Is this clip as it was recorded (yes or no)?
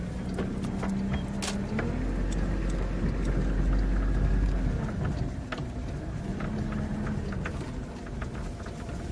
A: yes